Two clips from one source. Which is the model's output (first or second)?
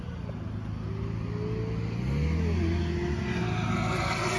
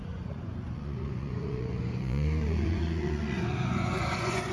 second